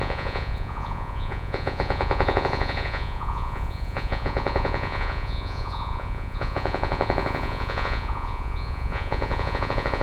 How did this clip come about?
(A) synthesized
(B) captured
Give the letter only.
A